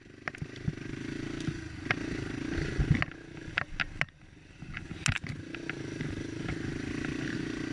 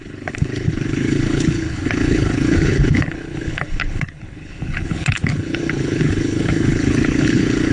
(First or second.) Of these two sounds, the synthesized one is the second